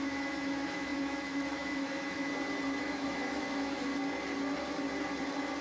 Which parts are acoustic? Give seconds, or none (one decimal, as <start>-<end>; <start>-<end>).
2.3-2.8; 3.9-5.6